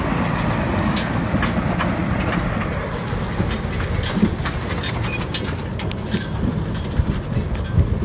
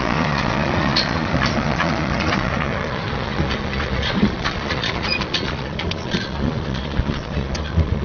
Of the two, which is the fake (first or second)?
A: second